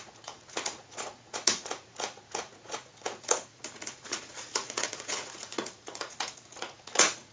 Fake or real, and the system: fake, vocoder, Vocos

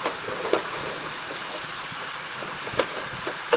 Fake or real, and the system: fake, vocoder, Vocos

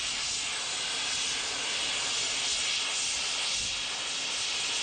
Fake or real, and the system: real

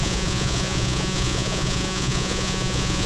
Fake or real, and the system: fake, vocoder, Vocos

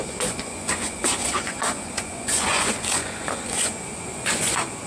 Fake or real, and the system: fake, vocoder, Vocos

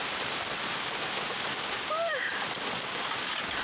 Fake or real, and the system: real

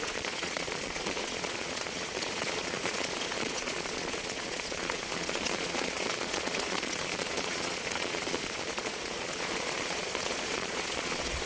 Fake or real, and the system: fake, vocoder, Vocos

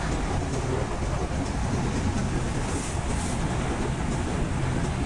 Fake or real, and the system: real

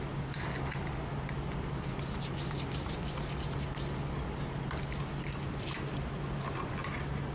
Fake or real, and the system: real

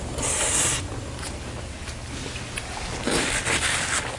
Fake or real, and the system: real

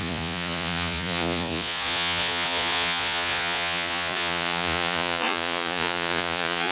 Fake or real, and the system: fake, vocoder, Vocos